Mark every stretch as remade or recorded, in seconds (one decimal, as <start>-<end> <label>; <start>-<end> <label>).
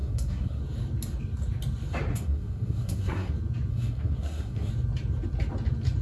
0.0-0.6 remade; 0.6-2.1 recorded; 2.1-3.3 remade; 3.3-3.7 recorded; 3.7-4.7 remade; 4.7-6.0 recorded